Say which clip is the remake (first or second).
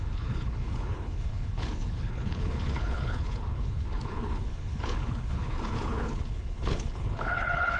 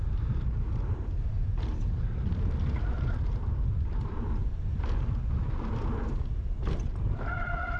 first